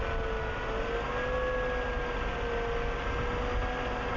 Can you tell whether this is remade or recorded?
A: recorded